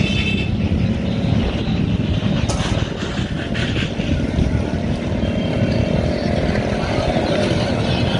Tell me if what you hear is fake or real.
real